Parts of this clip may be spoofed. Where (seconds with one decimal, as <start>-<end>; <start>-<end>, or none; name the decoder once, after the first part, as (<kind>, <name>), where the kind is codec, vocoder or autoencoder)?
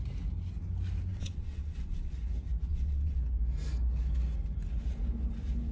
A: 1.1-2.1 (vocoder, WaveNeXt); 2.7-3.2